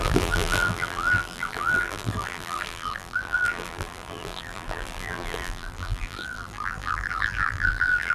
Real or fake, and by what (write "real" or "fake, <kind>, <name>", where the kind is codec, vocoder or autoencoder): fake, vocoder, BigVGAN v2